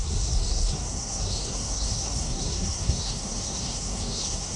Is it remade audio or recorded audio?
remade